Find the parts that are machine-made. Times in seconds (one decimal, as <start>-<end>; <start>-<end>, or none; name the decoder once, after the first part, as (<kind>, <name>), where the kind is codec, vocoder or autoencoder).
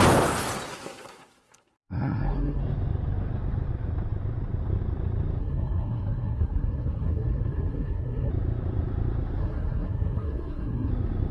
0.7-2.6 (codec, SNAC); 5.4-8.3; 9.4-10.9